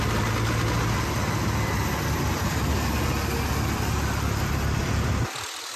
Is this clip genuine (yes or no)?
yes